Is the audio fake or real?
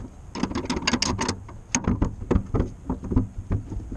real